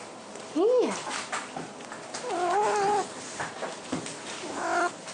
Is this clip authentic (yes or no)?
yes